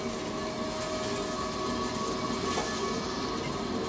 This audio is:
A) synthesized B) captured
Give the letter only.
B